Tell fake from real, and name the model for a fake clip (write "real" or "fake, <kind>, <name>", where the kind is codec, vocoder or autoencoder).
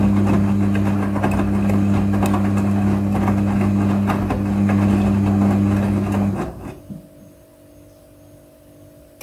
real